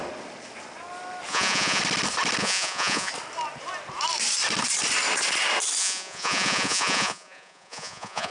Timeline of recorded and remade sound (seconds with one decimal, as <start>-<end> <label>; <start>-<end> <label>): 0.0-1.3 recorded; 1.3-1.8 remade; 1.8-2.4 recorded; 2.4-3.1 remade; 3.1-5.8 recorded; 5.8-8.3 remade